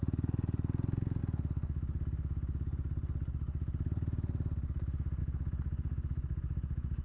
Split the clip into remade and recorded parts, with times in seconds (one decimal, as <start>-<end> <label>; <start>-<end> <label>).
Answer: 0.0-7.0 recorded